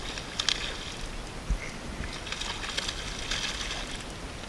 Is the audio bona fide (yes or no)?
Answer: yes